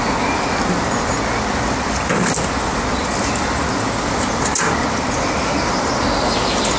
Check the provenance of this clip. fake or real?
real